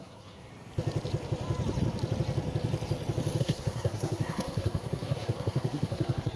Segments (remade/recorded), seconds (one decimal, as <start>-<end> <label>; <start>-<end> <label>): 0.0-0.5 remade; 0.5-3.4 recorded; 3.4-6.4 remade